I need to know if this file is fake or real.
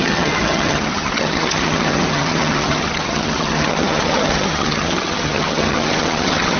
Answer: fake